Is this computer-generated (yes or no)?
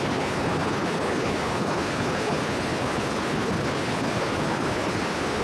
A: yes